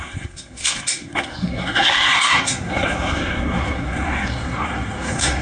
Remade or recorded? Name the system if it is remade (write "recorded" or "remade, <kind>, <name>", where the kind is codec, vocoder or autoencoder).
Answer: remade, codec, SNAC